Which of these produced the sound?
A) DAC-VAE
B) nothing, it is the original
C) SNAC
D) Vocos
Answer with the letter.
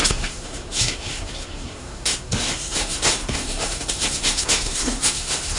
C